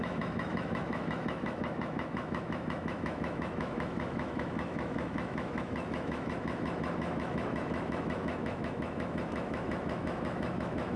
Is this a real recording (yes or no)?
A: no